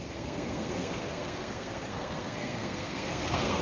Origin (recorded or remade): remade